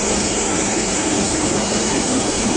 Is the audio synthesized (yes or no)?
yes